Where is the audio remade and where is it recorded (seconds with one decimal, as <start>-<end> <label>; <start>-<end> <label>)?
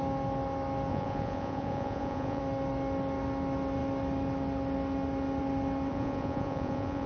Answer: 0.0-0.9 recorded; 0.9-2.4 remade; 2.4-5.9 recorded; 5.9-7.1 remade